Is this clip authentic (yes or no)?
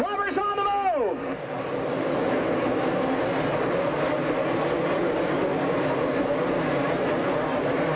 yes